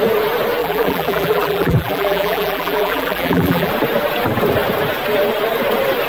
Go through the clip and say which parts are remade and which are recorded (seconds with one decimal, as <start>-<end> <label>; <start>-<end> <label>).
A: 0.0-0.6 recorded; 0.6-3.7 remade; 3.7-6.1 recorded